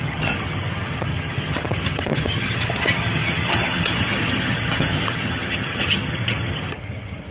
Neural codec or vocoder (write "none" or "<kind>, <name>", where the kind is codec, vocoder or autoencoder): vocoder, HiFi-GAN